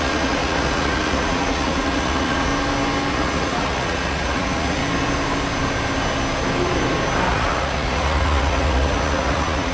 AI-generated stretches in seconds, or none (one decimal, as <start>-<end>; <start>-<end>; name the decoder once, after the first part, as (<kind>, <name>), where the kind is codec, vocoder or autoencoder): 0.0-2.5 (vocoder, Vocos); 3.1-4.8; 7.3-9.7